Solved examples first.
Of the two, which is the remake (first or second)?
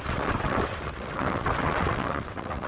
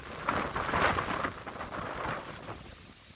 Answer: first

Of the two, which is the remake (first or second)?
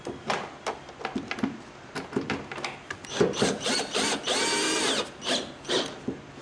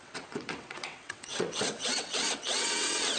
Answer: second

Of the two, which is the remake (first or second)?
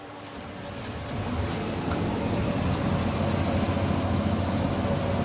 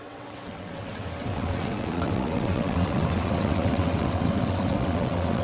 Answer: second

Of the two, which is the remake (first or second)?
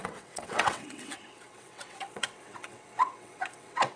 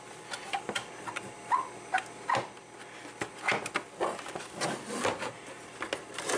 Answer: first